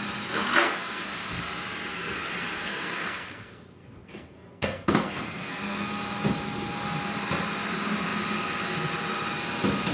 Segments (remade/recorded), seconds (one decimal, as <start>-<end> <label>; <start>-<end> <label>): 0.0-0.5 recorded; 0.5-1.4 remade; 1.4-1.9 recorded; 1.9-5.9 remade; 5.9-9.9 recorded